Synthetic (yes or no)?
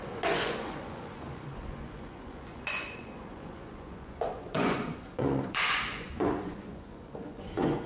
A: yes